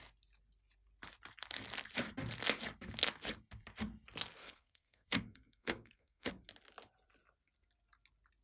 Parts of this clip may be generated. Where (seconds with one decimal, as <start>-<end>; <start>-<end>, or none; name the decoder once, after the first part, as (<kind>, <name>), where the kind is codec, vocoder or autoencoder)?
4.4-6.3 (codec, SNAC)